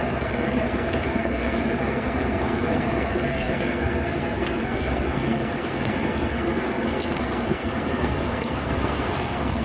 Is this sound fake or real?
fake